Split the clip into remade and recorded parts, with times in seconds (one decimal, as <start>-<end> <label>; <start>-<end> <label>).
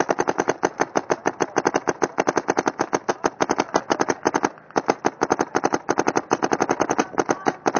0.0-7.8 recorded